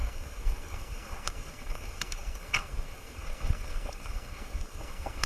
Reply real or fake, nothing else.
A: fake